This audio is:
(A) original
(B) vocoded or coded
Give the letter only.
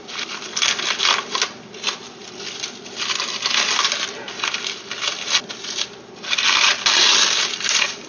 A